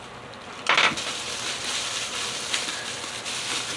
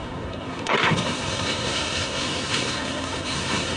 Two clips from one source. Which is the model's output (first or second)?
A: second